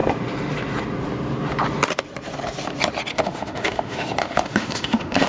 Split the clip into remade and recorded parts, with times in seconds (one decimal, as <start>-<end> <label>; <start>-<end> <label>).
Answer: 0.0-3.1 recorded; 3.1-5.3 remade